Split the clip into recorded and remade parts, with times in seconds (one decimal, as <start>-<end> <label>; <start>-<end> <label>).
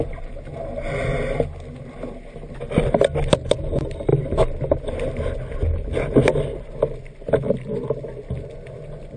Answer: 0.0-9.2 recorded